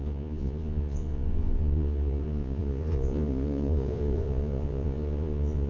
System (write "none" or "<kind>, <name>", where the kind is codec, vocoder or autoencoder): vocoder, Vocos